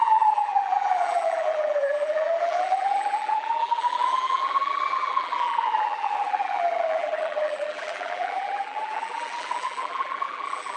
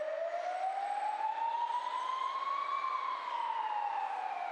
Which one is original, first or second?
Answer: second